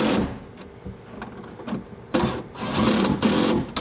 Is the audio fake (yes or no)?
no